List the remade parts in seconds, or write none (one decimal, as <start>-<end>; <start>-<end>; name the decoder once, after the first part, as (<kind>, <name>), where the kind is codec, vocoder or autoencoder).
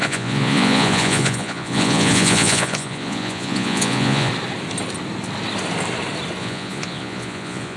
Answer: 0.0-4.3 (vocoder, Vocos); 6.4-7.8